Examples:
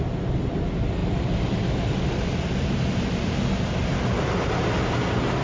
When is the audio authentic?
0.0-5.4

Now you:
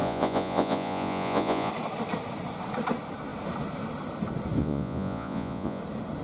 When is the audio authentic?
1.7-4.6; 5.8-6.2

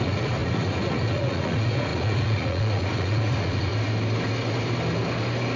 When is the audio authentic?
3.7-5.6

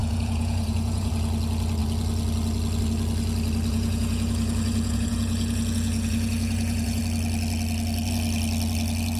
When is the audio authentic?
1.1-3.7; 7.0-9.2